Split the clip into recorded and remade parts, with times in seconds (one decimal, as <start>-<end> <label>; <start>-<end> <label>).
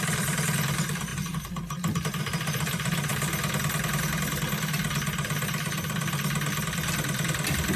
0.0-3.1 remade; 3.1-6.6 recorded; 6.6-7.8 remade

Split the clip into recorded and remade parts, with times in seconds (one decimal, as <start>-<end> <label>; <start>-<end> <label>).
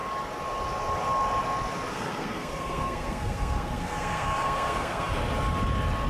0.0-1.9 recorded; 1.9-5.2 remade; 5.2-6.1 recorded